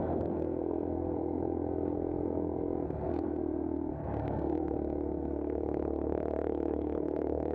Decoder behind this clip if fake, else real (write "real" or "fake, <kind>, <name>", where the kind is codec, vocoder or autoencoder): fake, codec, SNAC